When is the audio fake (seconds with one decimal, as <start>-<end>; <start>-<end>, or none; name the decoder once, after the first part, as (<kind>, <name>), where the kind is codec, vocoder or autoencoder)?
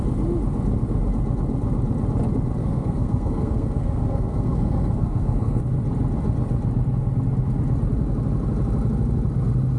2.6-5.6 (codec, SNAC)